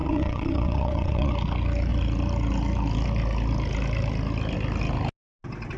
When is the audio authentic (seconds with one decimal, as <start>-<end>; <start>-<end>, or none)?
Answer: 1.3-5.8